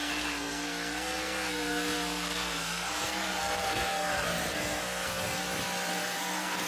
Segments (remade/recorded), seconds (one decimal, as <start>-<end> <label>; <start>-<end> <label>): 0.0-5.4 remade; 5.4-5.9 recorded; 5.9-6.7 remade